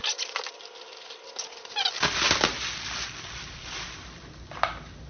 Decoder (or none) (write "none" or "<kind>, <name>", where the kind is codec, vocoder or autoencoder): none